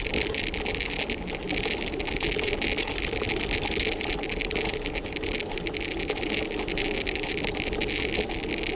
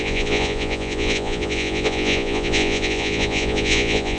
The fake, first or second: second